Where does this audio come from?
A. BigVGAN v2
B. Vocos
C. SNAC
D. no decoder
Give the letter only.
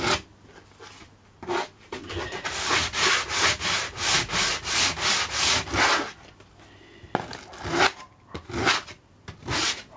D